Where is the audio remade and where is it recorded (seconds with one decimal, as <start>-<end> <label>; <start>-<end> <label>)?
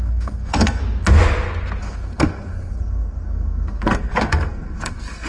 0.0-0.8 remade; 0.8-1.8 recorded; 1.8-5.3 remade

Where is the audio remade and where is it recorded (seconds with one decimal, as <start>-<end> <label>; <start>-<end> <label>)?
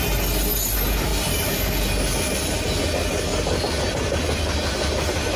0.0-5.4 recorded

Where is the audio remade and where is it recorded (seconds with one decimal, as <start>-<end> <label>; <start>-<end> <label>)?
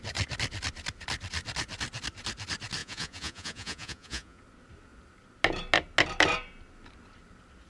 0.0-2.8 recorded; 2.8-4.4 remade; 4.4-7.7 recorded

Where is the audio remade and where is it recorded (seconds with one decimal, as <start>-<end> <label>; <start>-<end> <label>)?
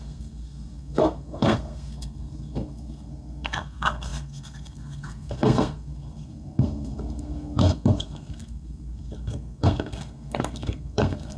0.0-11.4 remade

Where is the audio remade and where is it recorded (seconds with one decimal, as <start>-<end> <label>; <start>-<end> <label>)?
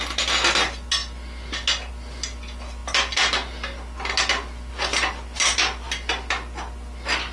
0.0-7.3 recorded